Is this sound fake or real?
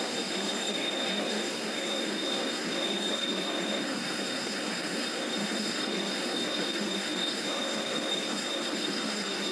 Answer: fake